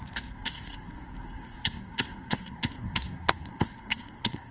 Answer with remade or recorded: remade